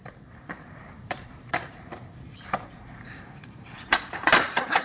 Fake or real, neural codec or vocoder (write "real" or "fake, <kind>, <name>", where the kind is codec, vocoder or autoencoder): fake, vocoder, BigVGAN v2